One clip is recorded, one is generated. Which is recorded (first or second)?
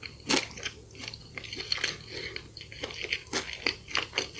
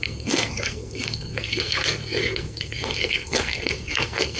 first